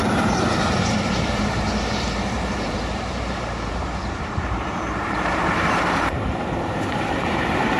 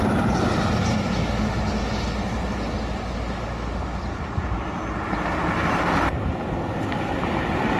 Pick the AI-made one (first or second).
first